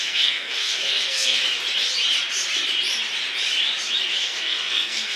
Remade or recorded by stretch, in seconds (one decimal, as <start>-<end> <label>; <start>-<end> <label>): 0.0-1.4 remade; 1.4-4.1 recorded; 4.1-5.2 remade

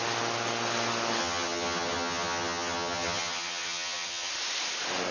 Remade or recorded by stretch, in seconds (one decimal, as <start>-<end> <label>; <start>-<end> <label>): 0.0-1.2 recorded; 1.2-4.3 remade; 4.3-5.1 recorded

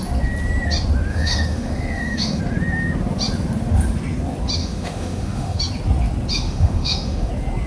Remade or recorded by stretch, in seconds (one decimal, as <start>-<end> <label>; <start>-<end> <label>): 0.0-1.1 recorded; 1.1-2.4 remade; 2.4-4.6 recorded; 4.6-5.6 remade; 5.6-6.3 recorded; 6.3-7.3 remade; 7.3-7.7 recorded

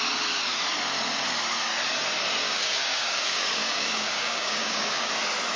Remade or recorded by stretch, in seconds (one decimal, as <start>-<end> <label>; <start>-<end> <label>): 0.0-2.4 recorded; 2.4-5.1 remade; 5.1-5.6 recorded

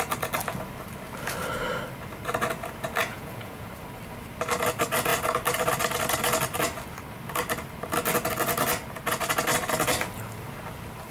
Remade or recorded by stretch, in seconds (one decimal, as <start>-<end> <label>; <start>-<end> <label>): 0.0-3.0 recorded; 3.0-3.7 remade; 3.7-11.1 recorded

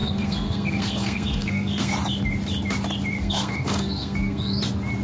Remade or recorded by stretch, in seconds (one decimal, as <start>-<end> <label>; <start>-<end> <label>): 0.0-1.9 remade; 1.9-3.2 recorded; 3.2-4.6 remade; 4.6-5.0 recorded